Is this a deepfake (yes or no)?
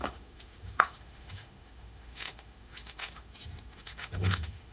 yes